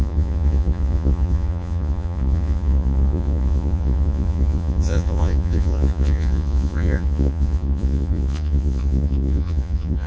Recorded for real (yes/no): no